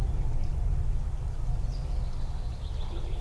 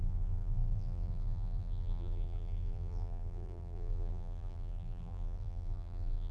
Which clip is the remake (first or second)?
second